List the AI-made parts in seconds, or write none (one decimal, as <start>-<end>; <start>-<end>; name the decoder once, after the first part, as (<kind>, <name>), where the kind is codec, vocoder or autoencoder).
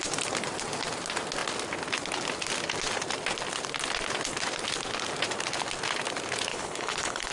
6.5-7.3 (codec, HILCodec)